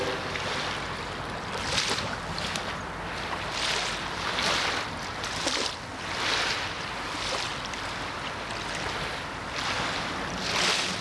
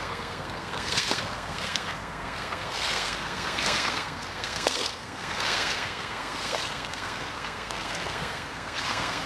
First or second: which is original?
first